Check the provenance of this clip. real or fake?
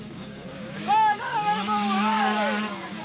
fake